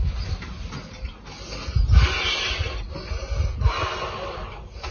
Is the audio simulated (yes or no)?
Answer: no